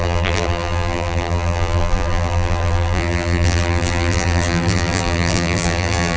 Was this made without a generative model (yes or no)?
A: no